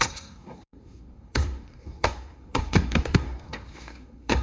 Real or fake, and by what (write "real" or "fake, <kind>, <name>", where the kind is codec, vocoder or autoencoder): fake, codec, SNAC